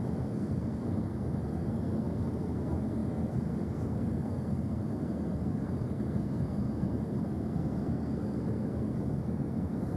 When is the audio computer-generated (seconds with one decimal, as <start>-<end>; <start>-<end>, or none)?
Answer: 0.0-10.0